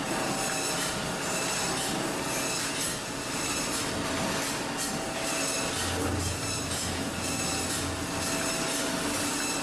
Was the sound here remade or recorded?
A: recorded